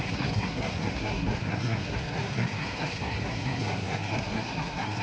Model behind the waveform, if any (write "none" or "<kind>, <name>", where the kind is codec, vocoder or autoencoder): codec, SNAC